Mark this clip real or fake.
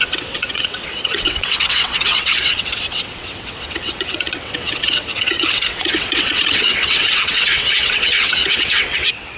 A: fake